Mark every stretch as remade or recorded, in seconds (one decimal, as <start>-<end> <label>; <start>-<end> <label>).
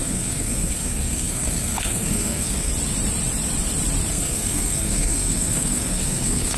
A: 0.0-2.7 remade; 2.7-4.1 recorded; 4.1-6.6 remade